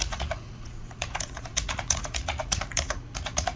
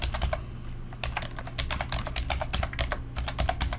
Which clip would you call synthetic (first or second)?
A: first